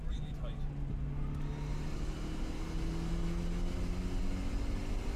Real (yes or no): yes